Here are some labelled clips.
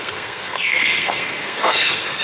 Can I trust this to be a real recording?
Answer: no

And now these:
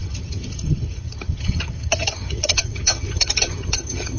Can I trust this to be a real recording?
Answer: no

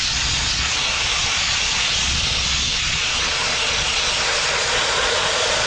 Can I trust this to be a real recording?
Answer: no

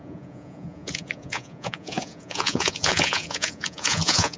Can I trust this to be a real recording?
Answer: no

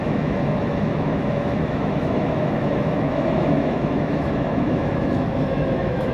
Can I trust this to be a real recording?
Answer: no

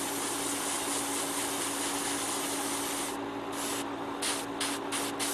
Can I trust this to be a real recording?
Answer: yes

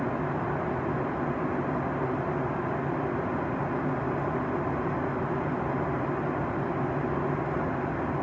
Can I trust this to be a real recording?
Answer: yes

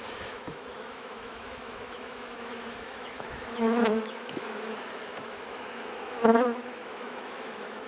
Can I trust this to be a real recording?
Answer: no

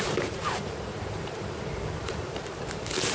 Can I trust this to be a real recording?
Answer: no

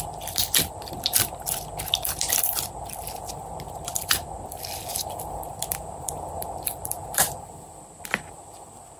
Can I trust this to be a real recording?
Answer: no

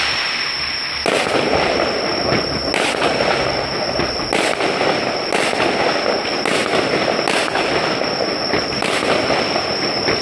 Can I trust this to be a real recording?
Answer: yes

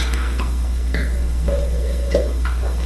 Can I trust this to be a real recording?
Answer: no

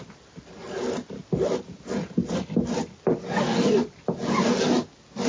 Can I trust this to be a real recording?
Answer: yes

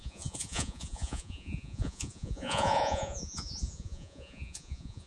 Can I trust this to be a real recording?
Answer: no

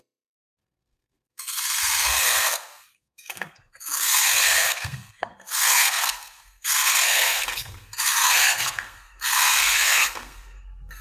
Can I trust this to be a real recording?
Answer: no